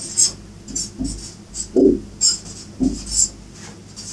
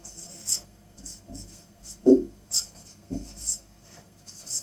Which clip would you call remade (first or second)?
second